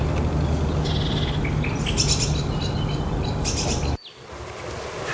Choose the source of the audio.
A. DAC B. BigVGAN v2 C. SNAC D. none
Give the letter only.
D